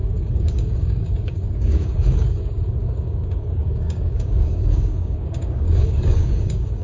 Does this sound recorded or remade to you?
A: remade